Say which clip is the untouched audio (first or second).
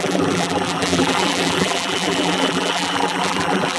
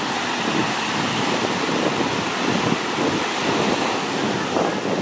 second